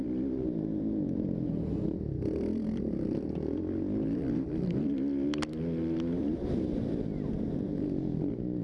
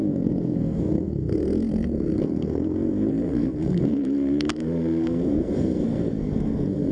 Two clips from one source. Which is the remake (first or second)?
second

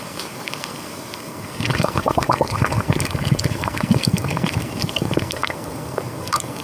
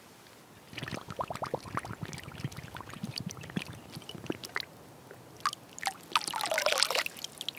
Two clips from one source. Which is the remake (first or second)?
first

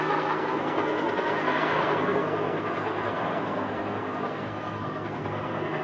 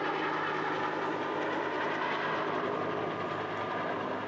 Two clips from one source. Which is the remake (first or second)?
first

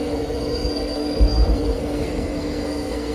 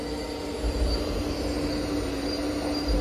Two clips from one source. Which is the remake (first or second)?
first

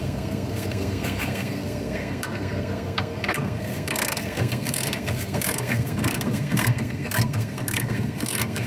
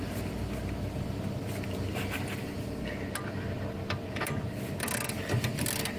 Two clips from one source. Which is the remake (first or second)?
first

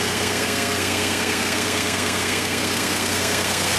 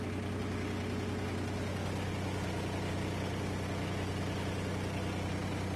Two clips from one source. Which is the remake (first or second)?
first